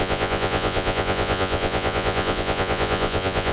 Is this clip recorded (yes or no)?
no